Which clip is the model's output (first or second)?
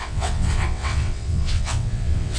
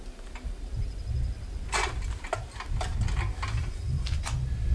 first